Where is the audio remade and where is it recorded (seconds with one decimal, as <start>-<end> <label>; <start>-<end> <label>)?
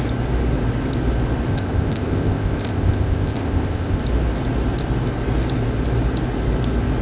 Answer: 0.0-1.5 recorded; 1.5-4.0 remade; 4.0-7.0 recorded